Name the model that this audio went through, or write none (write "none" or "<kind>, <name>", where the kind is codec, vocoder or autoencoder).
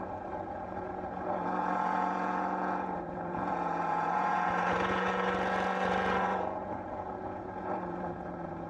vocoder, Vocos